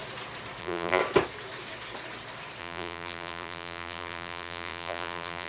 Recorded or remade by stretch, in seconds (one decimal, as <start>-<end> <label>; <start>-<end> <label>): 0.0-0.6 recorded; 0.6-1.0 remade; 1.0-2.6 recorded; 2.6-5.5 remade